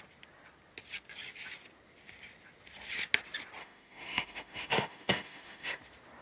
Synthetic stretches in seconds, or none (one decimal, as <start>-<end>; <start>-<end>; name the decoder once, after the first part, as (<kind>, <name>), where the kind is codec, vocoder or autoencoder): 3.6-5.8 (autoencoder, DAC-VAE)